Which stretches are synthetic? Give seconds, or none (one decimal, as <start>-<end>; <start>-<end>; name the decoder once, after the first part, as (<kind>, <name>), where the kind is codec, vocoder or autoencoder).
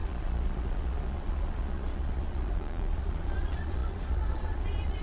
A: 0.0-5.0 (vocoder, Vocos)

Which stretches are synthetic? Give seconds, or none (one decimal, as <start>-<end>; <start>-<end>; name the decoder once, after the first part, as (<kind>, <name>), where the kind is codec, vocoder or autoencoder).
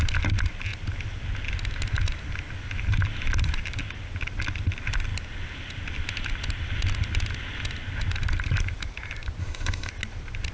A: 9.4-9.9 (autoencoder, DAC-VAE)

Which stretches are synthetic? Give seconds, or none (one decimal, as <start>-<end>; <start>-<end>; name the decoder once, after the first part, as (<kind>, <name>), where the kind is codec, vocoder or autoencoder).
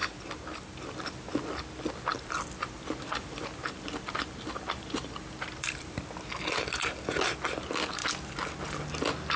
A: 0.0-0.9 (vocoder, BigVGAN v2); 2.1-6.0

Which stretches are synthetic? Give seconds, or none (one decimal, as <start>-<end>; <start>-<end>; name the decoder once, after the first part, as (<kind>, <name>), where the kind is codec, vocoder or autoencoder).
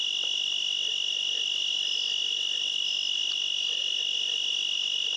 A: 0.9-3.2 (vocoder, BigVGAN v2); 3.8-5.2